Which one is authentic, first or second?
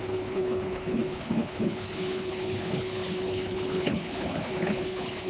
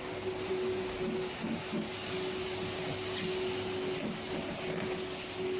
second